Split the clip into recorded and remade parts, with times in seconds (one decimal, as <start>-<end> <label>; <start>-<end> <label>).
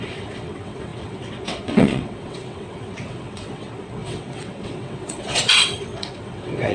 0.0-6.7 remade